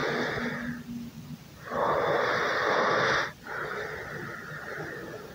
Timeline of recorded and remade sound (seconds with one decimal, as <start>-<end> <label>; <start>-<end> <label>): 0.0-5.3 recorded